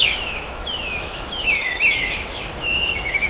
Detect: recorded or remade remade